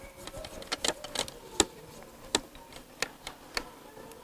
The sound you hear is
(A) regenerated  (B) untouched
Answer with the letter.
B